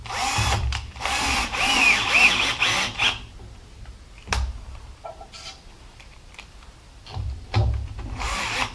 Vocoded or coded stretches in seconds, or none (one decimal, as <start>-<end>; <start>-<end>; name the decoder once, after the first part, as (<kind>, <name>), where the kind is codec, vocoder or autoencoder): 0.0-3.0 (vocoder, BigVGAN v2); 4.3-8.7